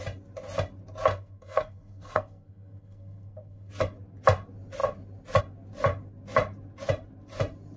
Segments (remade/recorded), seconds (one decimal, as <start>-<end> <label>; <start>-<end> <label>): 0.0-1.1 recorded; 1.1-3.7 remade; 3.7-7.8 recorded

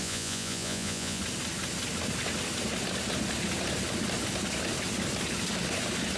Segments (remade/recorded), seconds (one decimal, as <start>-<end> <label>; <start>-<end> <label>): 0.0-1.2 remade; 1.2-6.2 recorded